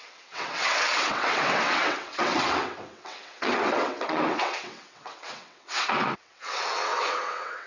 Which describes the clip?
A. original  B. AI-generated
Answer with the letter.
B